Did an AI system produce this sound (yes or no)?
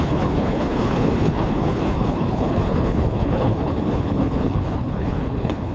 yes